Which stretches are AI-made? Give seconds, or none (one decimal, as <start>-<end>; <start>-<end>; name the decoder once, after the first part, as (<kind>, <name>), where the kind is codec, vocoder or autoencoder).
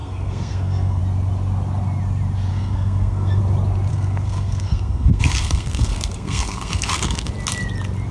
0.0-1.0 (codec, SNAC); 2.5-3.4; 3.9-7.3